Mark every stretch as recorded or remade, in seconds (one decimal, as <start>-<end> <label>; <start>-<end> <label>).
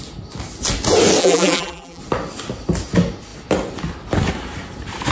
0.0-1.2 recorded; 1.2-2.0 remade; 2.0-5.1 recorded